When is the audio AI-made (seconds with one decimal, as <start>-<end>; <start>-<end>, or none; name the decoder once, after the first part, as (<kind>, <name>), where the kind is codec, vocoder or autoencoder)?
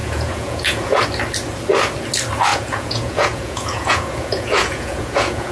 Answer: 0.0-1.0 (vocoder, Vocos); 2.5-5.5